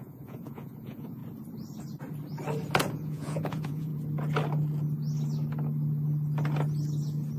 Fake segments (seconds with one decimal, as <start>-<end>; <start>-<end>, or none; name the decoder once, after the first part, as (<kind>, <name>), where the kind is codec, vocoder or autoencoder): 0.0-1.2 (vocoder, Vocos); 2.9-3.9